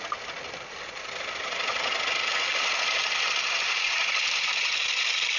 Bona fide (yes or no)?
yes